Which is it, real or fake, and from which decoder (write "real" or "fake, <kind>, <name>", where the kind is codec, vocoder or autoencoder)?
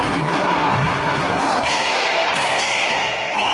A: fake, codec, SNAC